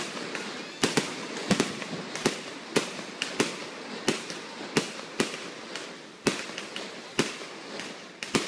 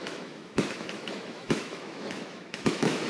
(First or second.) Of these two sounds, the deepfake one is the second